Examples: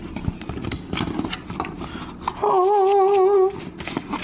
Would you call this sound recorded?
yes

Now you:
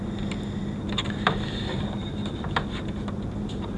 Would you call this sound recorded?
yes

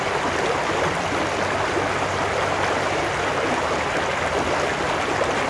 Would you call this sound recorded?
yes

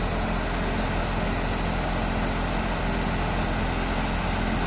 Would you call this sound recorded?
yes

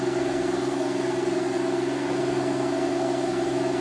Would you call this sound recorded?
no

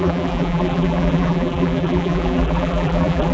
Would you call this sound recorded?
no